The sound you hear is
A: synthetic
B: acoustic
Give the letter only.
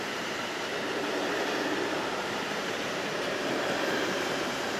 A